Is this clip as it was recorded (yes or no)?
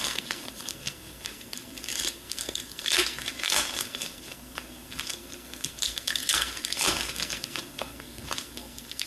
no